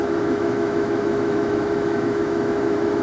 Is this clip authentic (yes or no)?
no